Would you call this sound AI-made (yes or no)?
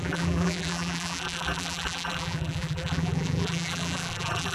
yes